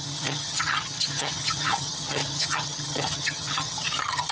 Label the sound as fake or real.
fake